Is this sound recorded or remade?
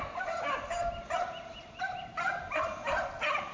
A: remade